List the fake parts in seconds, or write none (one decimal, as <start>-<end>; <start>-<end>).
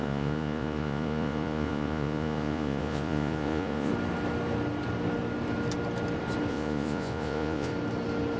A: 0.0-3.9; 6.5-7.7